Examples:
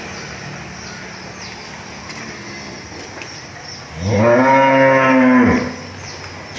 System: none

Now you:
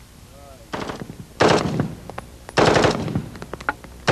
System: none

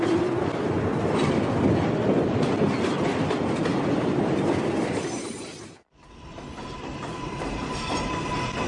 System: vocoder, BigVGAN v2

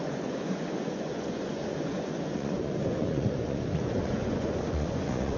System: vocoder, Vocos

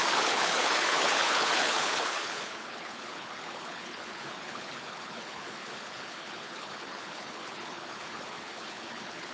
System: codec, HILCodec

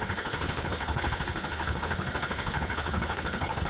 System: codec, HILCodec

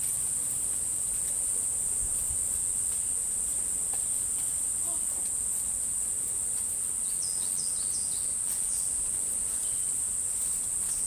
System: none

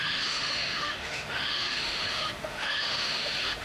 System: autoencoder, DAC-VAE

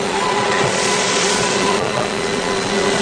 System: vocoder, Vocos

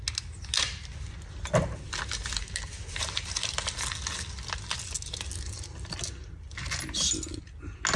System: none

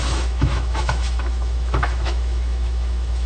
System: autoencoder, DAC-VAE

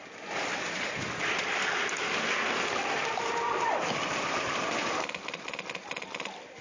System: vocoder, BigVGAN v2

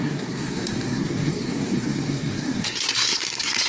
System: codec, SNAC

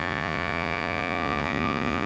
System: vocoder, Vocos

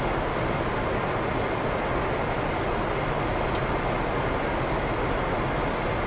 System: none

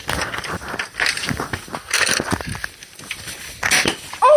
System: none